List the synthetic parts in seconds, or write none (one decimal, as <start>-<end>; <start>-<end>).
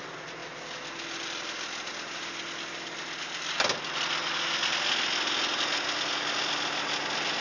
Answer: none